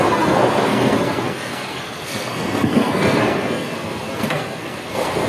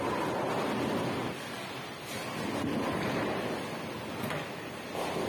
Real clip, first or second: second